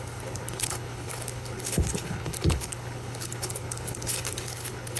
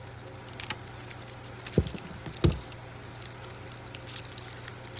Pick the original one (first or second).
second